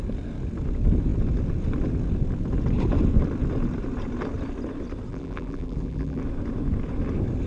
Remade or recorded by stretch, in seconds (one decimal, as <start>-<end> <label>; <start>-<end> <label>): 0.0-5.1 recorded; 5.1-6.2 remade; 6.2-7.5 recorded